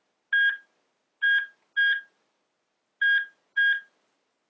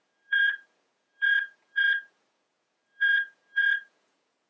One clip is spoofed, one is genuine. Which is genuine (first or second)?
first